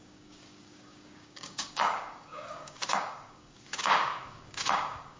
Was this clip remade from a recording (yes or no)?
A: yes